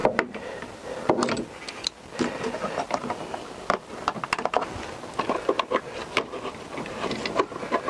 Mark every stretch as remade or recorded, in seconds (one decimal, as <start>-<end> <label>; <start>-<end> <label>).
0.0-7.9 recorded